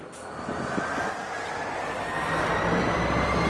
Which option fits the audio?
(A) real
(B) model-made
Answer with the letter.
B